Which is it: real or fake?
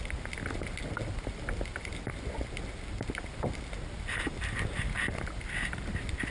real